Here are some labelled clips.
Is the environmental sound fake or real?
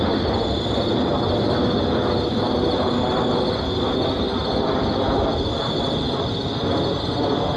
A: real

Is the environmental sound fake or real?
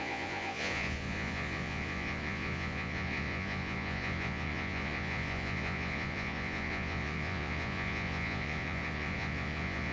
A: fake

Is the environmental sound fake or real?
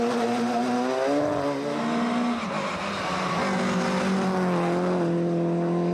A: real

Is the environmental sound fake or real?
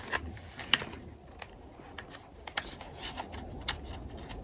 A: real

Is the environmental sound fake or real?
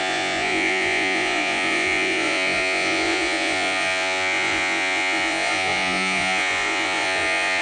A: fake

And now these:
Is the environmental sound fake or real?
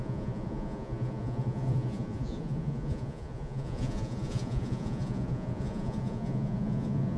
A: fake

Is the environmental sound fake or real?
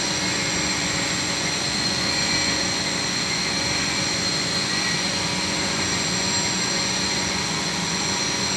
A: fake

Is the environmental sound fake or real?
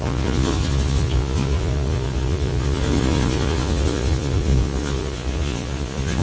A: fake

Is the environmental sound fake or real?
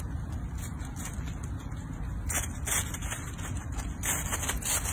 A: real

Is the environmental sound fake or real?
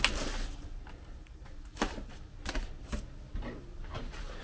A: real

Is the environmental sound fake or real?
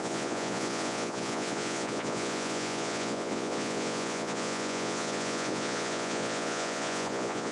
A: fake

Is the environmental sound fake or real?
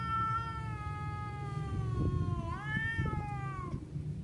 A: real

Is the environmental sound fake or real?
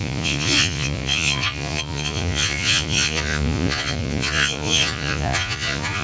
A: fake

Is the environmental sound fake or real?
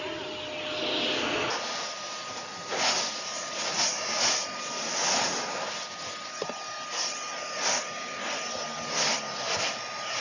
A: real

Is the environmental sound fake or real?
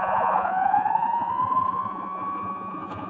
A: fake